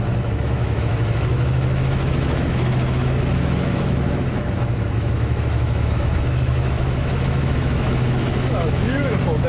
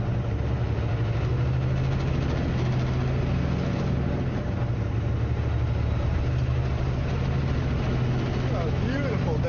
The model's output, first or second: first